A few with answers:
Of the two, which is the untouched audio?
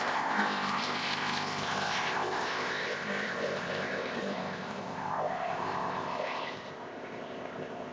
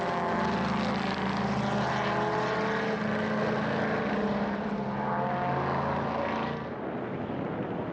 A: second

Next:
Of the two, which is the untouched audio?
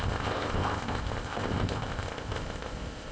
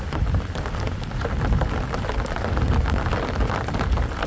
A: second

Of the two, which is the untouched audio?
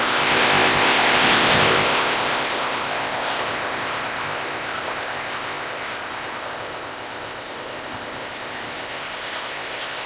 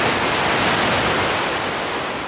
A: second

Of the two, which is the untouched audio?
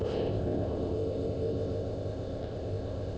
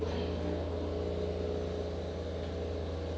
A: second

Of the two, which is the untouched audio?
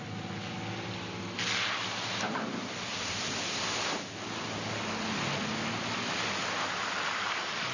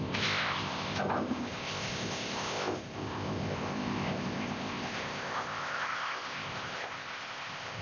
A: first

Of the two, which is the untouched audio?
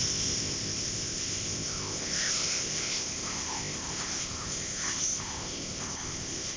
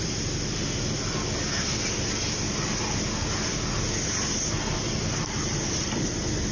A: second